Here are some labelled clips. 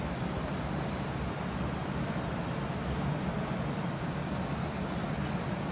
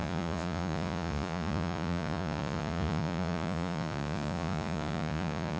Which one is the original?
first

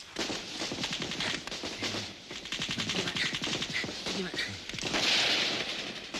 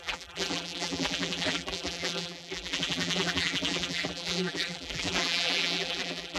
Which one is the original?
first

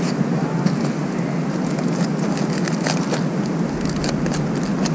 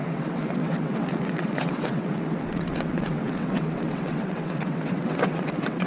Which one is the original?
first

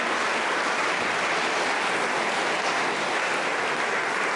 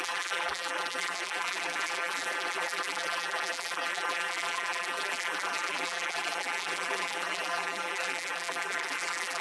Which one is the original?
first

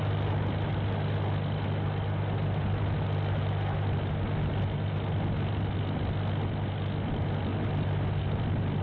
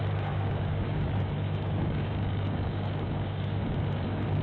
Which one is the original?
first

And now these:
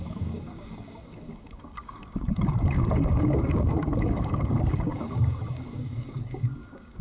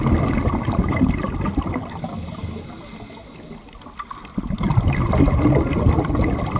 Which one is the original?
second